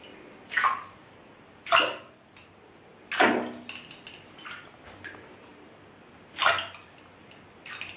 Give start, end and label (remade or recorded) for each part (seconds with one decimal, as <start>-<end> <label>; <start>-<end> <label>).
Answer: 0.0-8.0 recorded